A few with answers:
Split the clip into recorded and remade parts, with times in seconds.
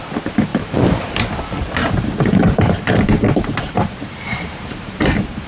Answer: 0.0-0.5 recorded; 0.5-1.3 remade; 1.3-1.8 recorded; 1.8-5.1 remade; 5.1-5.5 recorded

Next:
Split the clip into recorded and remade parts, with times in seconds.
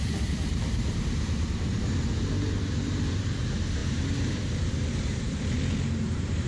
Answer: 0.0-6.5 remade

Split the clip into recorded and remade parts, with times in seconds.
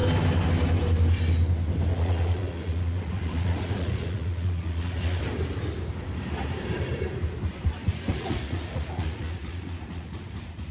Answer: 0.0-1.9 recorded; 1.9-5.2 remade; 5.2-7.8 recorded; 7.8-10.7 remade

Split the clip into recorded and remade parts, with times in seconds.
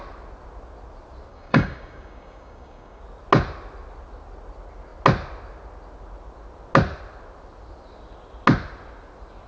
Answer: 0.0-1.3 recorded; 1.3-3.0 remade; 3.0-9.5 recorded